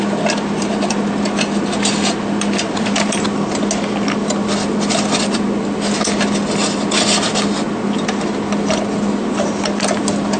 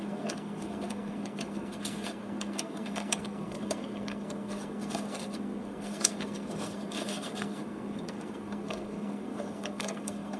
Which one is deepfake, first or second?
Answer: second